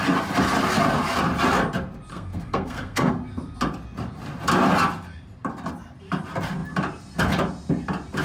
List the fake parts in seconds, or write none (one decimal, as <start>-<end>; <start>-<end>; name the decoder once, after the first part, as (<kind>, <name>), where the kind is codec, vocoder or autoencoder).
2.1-3.1 (codec, SNAC)